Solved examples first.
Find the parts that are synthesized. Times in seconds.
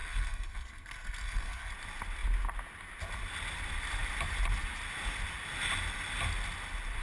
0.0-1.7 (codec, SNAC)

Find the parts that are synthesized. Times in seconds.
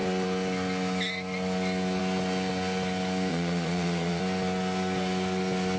3.3-4.2 (vocoder, Vocos)